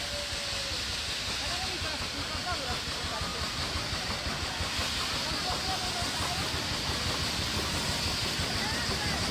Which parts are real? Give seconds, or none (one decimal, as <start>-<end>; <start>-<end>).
0.0-3.3; 4.1-9.3